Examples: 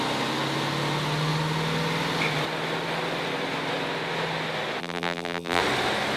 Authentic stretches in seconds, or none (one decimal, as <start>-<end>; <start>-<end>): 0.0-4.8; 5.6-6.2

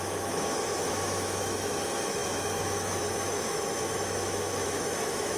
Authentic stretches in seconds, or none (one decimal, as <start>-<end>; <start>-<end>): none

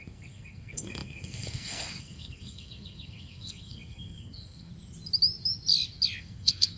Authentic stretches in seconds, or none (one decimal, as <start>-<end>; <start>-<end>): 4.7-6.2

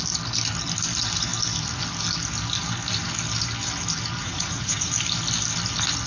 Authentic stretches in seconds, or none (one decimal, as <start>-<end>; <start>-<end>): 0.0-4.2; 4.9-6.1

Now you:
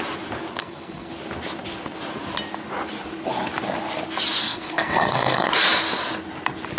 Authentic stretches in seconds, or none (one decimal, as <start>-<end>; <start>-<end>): 0.0-0.6; 1.1-4.4; 5.5-6.8